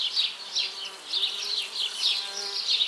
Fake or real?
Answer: real